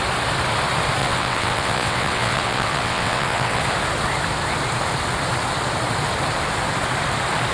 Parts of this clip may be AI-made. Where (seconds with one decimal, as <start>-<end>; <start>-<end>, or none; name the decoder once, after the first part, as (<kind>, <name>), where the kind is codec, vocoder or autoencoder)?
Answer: 1.0-3.6 (vocoder, WaveNeXt)